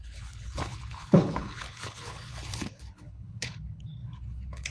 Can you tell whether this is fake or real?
fake